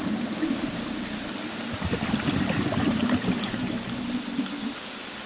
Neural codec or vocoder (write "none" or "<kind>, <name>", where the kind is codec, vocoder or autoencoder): none